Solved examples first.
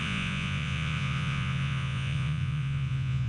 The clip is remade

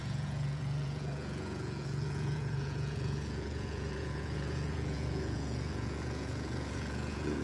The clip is remade